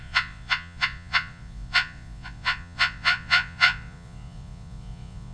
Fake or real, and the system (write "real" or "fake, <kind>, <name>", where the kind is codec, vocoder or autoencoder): fake, vocoder, Vocos